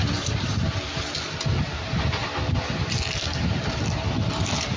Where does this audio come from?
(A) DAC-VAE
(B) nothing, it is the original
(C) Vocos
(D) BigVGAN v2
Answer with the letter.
B